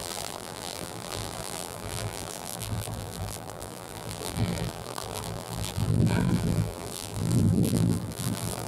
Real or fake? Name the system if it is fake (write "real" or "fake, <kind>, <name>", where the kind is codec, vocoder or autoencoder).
fake, vocoder, BigVGAN v2